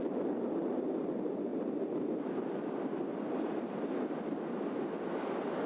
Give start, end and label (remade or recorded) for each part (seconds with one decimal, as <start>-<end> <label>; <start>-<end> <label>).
0.0-5.7 recorded

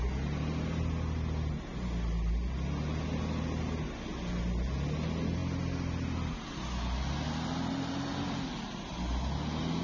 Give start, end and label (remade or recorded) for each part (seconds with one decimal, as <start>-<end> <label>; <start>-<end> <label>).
0.0-9.8 recorded

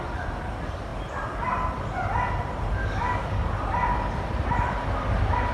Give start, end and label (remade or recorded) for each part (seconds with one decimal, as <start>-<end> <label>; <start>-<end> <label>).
0.0-2.8 recorded; 2.8-3.5 remade; 3.5-5.5 recorded

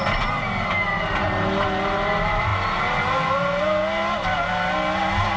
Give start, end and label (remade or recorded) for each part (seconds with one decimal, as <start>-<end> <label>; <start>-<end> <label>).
0.0-5.4 recorded